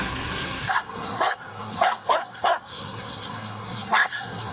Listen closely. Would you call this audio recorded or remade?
remade